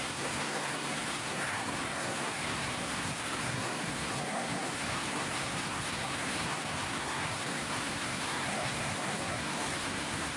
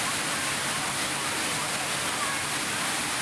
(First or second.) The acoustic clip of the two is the second